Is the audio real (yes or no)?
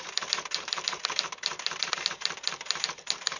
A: no